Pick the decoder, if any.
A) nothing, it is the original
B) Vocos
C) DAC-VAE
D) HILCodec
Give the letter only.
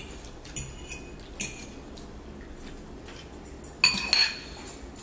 A